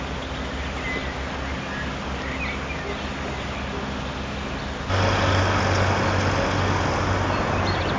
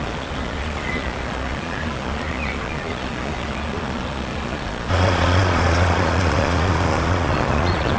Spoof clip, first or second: second